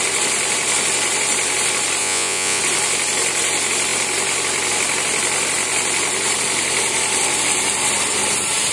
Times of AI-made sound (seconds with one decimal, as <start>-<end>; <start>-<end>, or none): 2.0-2.6